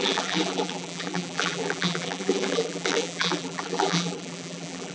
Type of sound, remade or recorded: remade